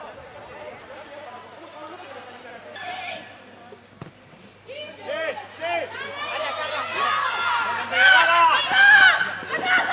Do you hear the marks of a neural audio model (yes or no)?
no